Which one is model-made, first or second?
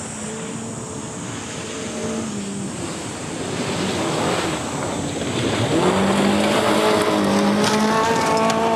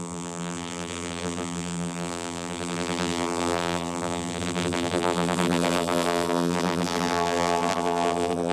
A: second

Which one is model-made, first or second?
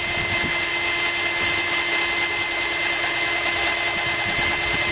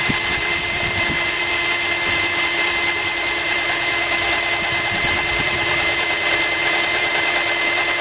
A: second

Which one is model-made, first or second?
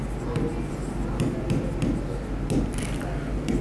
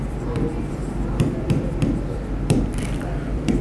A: second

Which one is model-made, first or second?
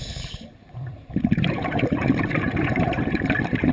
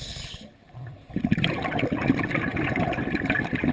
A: first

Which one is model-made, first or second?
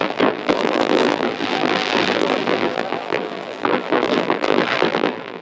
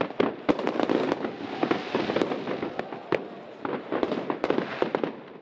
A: first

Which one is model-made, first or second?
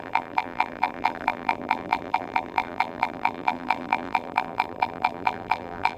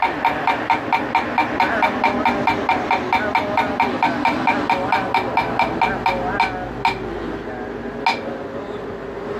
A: first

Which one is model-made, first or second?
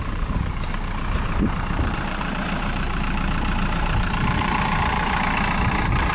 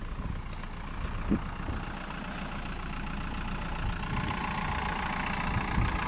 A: first